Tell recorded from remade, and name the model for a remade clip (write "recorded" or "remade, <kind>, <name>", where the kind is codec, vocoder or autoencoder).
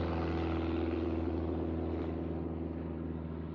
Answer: recorded